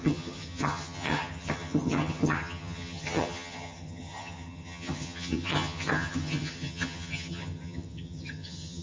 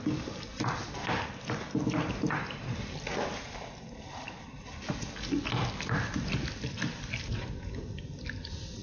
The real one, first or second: second